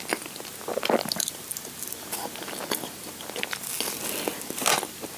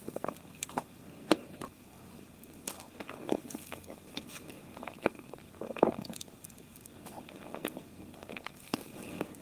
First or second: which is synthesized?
second